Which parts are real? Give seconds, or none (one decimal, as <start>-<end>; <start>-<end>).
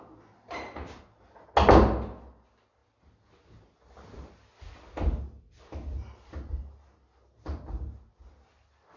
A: 0.0-9.0